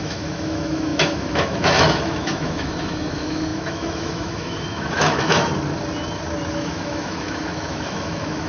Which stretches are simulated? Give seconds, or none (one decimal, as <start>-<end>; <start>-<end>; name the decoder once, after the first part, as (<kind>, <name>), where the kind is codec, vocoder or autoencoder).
0.0-5.5 (autoencoder, DAC-VAE); 6.5-8.5